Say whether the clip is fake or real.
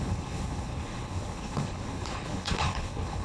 fake